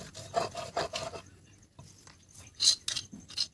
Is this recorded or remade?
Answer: recorded